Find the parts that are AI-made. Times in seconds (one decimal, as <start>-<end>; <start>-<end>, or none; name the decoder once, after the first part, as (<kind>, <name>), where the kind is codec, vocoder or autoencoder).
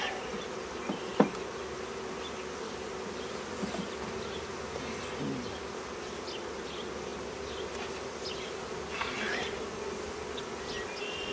none